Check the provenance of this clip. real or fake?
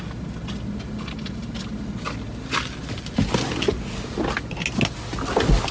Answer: real